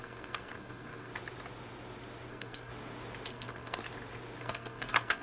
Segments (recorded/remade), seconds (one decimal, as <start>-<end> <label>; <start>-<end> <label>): 0.0-1.1 remade; 1.1-2.3 recorded; 2.3-2.7 remade; 2.7-3.3 recorded; 3.3-3.8 remade; 3.8-4.4 recorded; 4.4-5.2 remade